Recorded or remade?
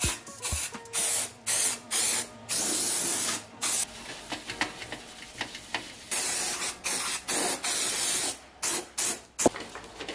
recorded